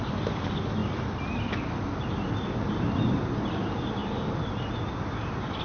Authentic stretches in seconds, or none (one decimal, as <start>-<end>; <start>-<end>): 0.0-5.6